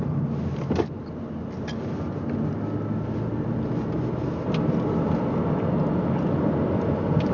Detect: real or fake real